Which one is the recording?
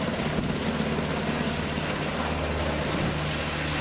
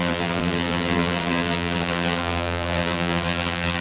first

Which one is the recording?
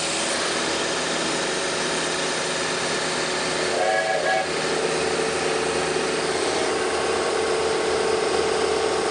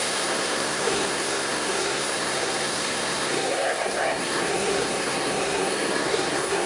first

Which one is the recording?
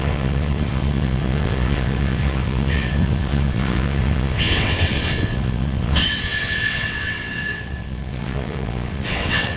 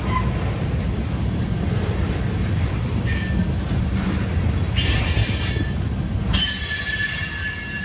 second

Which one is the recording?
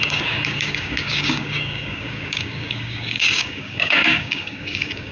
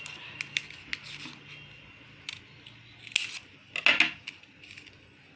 second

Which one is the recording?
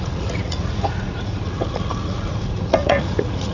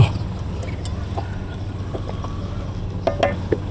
second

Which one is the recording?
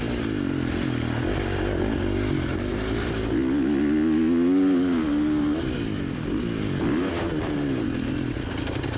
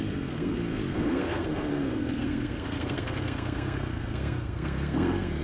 first